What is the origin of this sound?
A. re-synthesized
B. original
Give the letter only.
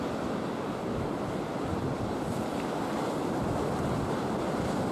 B